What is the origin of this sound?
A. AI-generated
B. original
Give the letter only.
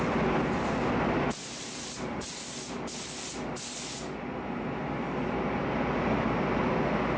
B